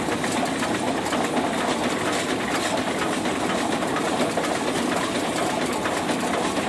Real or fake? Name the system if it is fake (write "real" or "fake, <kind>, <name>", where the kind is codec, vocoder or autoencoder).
real